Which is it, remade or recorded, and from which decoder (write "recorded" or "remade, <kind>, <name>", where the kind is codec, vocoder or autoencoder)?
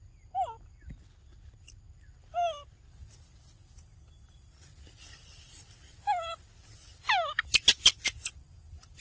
recorded